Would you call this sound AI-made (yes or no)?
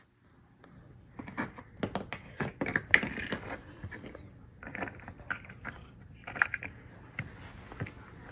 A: no